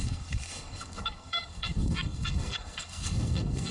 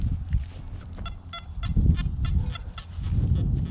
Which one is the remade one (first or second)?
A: first